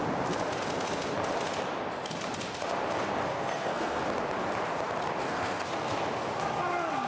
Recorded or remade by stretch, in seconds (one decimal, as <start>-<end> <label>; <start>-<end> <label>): 0.0-3.3 recorded; 3.3-4.0 remade; 4.0-5.2 recorded; 5.2-5.9 remade; 5.9-7.1 recorded

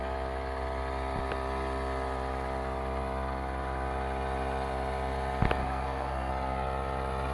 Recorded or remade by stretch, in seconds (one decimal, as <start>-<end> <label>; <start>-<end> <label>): 0.0-5.6 recorded; 5.6-6.3 remade; 6.3-7.3 recorded

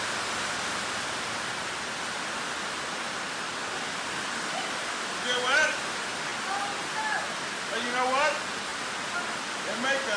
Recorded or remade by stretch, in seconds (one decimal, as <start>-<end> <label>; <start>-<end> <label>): 0.0-10.2 recorded